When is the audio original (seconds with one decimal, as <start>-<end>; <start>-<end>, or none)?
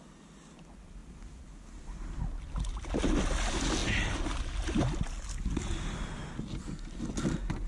0.0-7.7